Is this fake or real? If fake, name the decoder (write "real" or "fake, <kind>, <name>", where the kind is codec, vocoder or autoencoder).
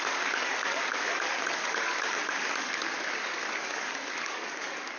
fake, codec, DAC